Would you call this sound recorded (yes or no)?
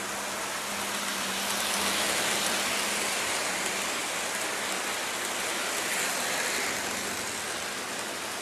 yes